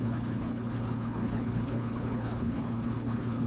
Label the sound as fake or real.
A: fake